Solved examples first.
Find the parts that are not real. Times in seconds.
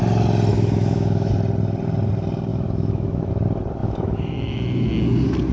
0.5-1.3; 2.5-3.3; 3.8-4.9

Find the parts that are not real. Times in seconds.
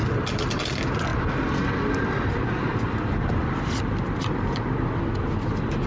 none